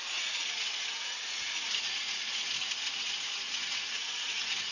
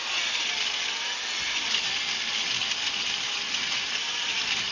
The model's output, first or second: first